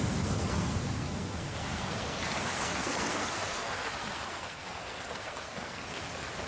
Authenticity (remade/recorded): remade